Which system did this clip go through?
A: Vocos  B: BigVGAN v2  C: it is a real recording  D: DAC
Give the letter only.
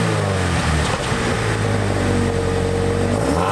C